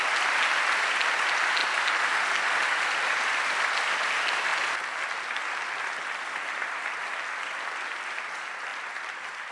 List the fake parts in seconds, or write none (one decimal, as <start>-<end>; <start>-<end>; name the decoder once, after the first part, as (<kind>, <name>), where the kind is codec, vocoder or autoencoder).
none